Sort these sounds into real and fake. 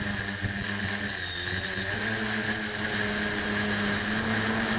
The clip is real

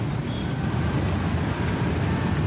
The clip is real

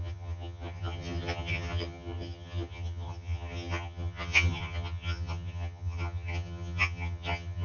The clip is fake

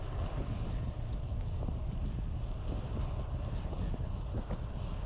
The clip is real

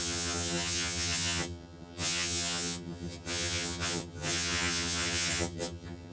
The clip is fake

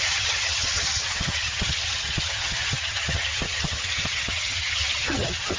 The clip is fake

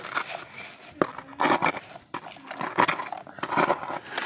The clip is real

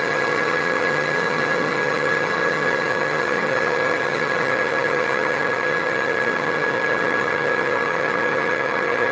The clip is fake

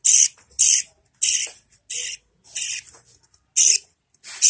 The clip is real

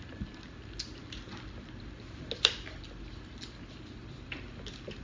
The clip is real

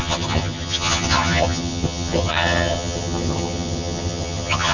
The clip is fake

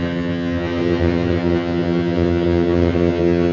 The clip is fake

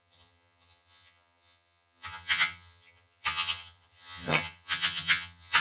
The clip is fake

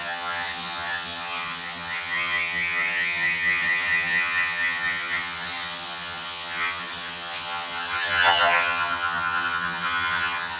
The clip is fake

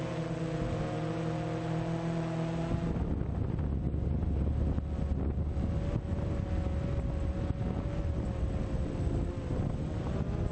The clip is real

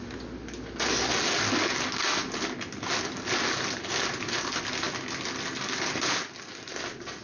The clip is real